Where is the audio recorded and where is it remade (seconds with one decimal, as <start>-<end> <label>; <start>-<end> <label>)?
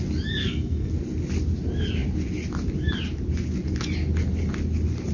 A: 0.0-0.4 recorded; 0.4-0.9 remade; 0.9-5.1 recorded